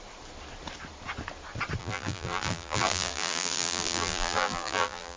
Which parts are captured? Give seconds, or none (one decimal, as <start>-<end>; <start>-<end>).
0.0-1.8